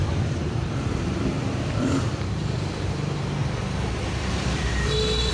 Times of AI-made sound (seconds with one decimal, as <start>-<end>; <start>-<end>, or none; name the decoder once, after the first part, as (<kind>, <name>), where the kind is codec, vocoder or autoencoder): 0.7-3.4 (vocoder, BigVGAN v2); 4.0-5.3